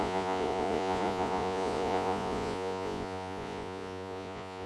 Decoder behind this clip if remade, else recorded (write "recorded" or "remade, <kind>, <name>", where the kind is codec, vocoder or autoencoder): remade, vocoder, Vocos